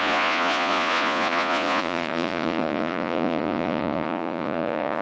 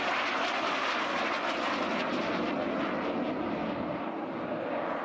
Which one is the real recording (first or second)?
second